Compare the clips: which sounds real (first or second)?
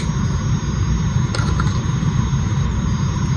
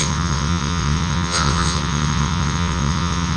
first